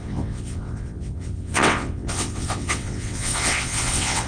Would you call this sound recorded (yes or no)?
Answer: no